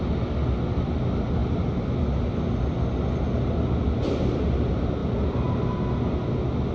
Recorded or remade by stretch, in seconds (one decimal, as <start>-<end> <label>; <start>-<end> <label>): 0.0-6.7 recorded